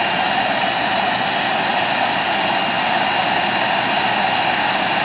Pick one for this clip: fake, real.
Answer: real